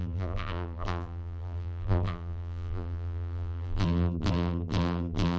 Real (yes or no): no